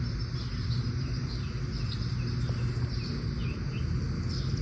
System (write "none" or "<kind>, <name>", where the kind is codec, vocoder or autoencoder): none